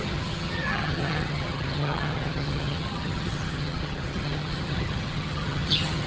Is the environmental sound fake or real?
fake